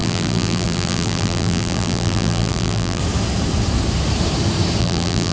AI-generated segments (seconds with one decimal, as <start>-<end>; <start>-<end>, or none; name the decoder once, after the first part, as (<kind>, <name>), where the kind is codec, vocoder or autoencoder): 0.0-3.0 (vocoder, BigVGAN v2); 4.8-5.3